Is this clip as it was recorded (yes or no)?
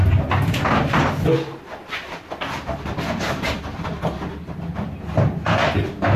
yes